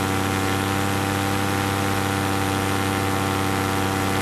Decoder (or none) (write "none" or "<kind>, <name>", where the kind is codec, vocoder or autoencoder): none